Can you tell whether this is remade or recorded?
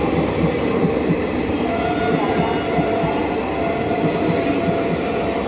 recorded